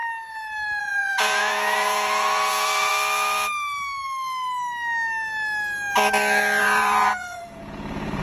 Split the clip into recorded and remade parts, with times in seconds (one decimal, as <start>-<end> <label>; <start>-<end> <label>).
0.0-0.8 recorded; 0.8-2.9 remade; 2.9-6.6 recorded; 6.6-8.2 remade